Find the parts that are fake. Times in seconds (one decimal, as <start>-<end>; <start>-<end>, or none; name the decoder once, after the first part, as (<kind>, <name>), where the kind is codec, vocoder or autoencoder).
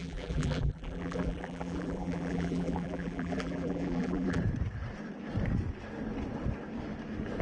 0.0-4.4 (vocoder, BigVGAN v2)